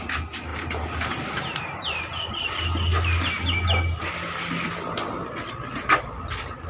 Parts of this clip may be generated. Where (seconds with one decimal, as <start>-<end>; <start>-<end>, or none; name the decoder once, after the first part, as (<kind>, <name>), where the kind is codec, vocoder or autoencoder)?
0.5-2.0 (vocoder, BigVGAN v2)